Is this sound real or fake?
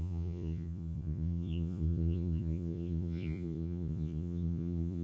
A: fake